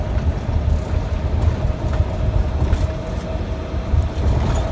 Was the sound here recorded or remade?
recorded